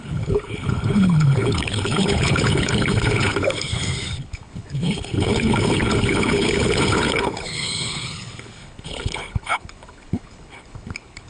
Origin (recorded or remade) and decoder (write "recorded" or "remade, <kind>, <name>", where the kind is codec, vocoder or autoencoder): remade, codec, HILCodec